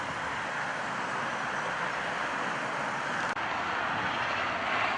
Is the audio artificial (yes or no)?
no